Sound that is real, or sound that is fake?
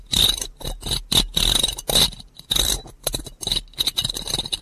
real